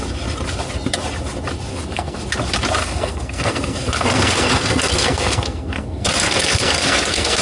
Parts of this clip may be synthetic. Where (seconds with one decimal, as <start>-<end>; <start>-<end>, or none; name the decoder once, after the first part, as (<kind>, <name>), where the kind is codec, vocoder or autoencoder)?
1.7-2.2 (codec, SNAC); 2.8-7.4